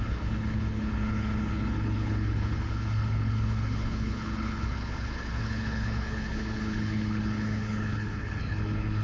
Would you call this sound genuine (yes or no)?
no